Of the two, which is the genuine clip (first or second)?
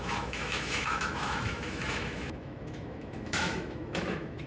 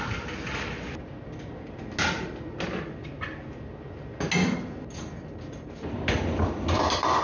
second